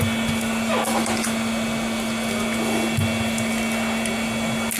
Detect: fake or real real